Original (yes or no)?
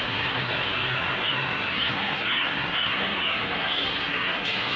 no